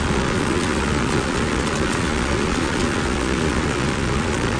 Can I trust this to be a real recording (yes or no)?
no